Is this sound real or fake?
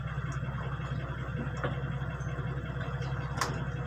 real